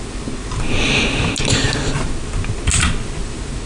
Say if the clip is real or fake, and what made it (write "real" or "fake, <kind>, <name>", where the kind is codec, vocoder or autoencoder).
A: real